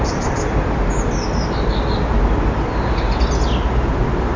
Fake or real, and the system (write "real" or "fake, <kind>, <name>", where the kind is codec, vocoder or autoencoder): real